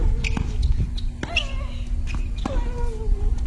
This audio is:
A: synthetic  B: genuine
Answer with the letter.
B